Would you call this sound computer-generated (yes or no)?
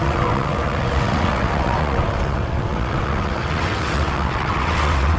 yes